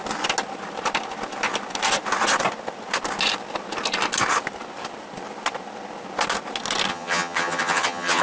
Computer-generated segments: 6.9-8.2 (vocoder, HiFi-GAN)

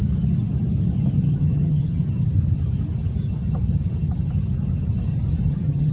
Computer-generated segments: 1.2-2.0 (vocoder, HiFi-GAN); 5.5-5.9